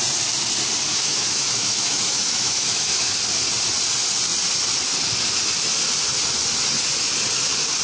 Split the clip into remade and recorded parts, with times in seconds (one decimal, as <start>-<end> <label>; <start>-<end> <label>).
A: 0.0-0.9 recorded; 0.9-3.2 remade; 3.2-7.8 recorded